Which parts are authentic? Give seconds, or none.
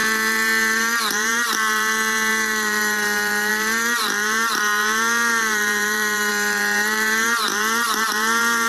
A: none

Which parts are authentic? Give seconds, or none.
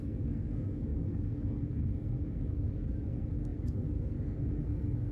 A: none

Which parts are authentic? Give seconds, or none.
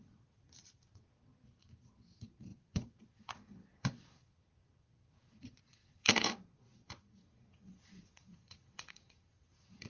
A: none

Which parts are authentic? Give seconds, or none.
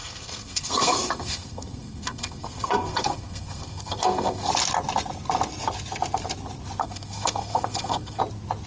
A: 4.5-6.8; 8.2-8.7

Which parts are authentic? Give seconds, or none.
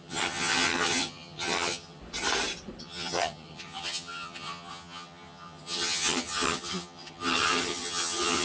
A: 2.0-2.8